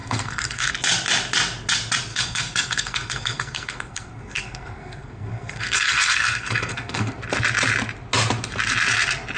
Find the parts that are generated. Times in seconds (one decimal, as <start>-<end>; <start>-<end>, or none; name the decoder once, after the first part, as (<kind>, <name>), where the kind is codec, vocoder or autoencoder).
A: 0.0-0.7 (codec, SNAC); 2.1-7.2